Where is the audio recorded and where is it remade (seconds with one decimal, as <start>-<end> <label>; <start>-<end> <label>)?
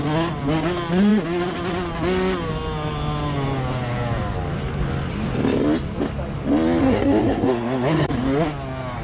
0.0-6.8 recorded; 6.8-8.1 remade; 8.1-9.0 recorded